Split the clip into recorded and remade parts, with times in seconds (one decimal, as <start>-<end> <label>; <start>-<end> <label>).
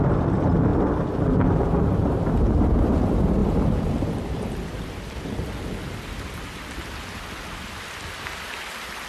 0.0-9.1 recorded